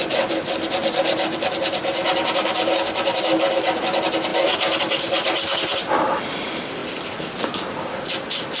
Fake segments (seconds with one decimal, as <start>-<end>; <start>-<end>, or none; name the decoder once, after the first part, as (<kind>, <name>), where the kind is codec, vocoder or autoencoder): none